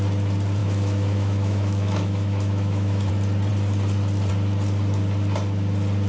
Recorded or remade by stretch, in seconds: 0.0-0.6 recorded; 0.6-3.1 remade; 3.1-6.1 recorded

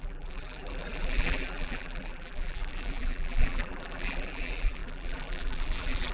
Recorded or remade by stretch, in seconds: 0.0-6.1 remade

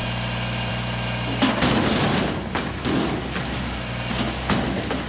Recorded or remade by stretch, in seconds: 0.0-5.1 recorded